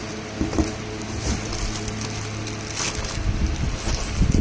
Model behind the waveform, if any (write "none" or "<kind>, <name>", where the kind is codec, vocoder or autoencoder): none